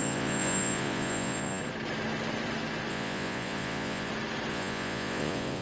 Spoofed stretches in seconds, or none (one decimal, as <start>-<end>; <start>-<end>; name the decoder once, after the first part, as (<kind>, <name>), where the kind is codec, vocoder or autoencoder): 0.0-1.6 (vocoder, Vocos); 2.9-4.1; 4.5-5.6